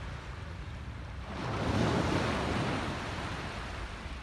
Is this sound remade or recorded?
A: recorded